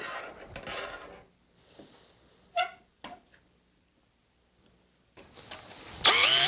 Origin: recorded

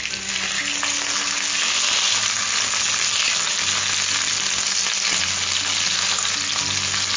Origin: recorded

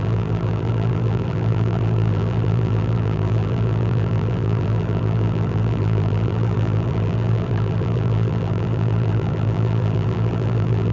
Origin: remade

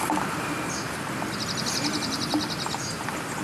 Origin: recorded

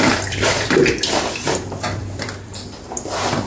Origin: remade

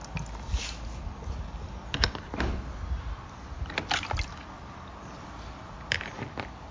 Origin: recorded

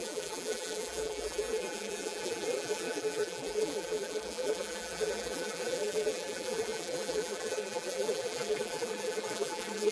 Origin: remade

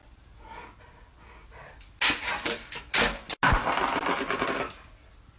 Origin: recorded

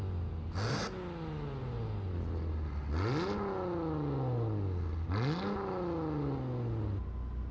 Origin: recorded